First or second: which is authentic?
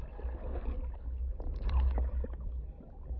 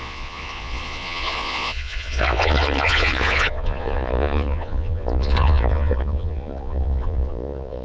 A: first